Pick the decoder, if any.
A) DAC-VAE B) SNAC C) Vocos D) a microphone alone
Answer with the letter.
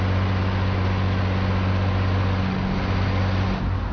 D